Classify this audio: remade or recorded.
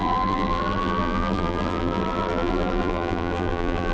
remade